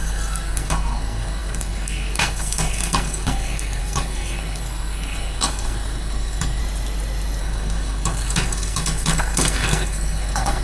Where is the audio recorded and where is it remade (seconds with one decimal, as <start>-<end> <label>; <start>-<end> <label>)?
0.0-6.6 remade; 6.6-7.4 recorded; 7.4-10.6 remade